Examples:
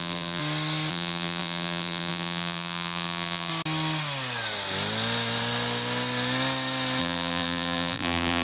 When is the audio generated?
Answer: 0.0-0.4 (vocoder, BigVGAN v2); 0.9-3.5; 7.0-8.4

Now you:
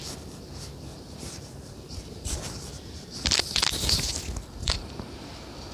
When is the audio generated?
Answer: 0.9-4.1 (vocoder, BigVGAN v2); 4.6-5.2